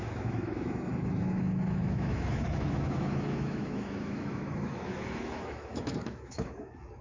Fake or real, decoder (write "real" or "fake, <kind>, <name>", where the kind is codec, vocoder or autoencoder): fake, autoencoder, DAC-VAE